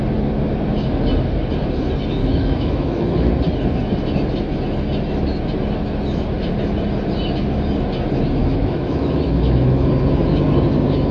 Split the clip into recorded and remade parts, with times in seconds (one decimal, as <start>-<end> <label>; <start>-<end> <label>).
0.0-2.2 recorded; 2.2-3.3 remade; 3.3-8.4 recorded; 8.4-9.9 remade; 9.9-11.1 recorded